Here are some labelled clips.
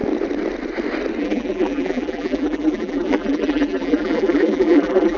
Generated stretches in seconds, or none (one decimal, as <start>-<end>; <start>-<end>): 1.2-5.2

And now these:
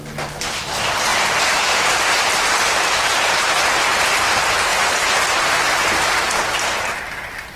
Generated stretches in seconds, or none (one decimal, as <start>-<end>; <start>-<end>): 1.1-2.2; 3.1-3.6

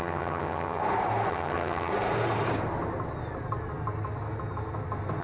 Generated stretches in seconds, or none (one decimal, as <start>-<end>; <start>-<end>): 0.0-0.8; 1.3-1.9

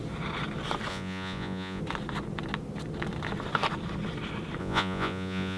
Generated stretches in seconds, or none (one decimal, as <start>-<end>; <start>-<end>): 0.9-1.8; 4.6-5.6

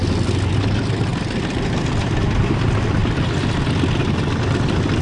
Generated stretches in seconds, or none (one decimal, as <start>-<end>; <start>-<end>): none